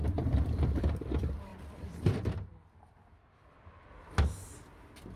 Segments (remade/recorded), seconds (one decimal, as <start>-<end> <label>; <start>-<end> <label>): 0.0-0.8 remade; 0.8-1.5 recorded; 1.5-3.9 remade; 3.9-5.2 recorded